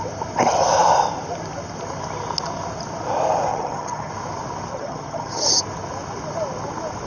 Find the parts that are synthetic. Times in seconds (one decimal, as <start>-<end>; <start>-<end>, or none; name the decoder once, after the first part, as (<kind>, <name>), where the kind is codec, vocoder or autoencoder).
3.5-4.1 (vocoder, HiFi-GAN); 4.7-5.6